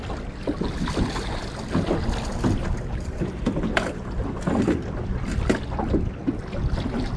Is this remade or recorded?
recorded